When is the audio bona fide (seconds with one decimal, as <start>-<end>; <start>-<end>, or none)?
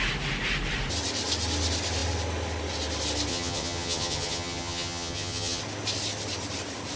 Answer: 0.0-3.3; 5.6-7.0